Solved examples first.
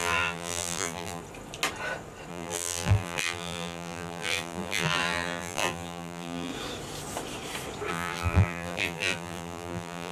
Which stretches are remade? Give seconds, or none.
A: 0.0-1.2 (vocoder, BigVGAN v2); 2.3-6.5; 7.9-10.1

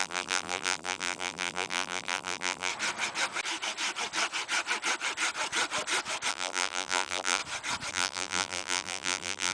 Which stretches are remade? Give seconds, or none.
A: 0.0-2.7 (vocoder, BigVGAN v2); 6.3-7.4; 7.9-9.5

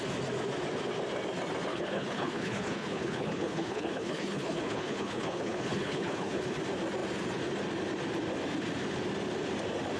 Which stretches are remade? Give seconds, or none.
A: 1.7-6.6 (codec, HILCodec)

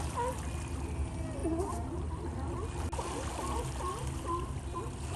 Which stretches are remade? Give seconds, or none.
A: none